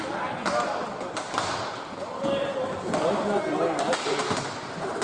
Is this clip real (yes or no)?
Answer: yes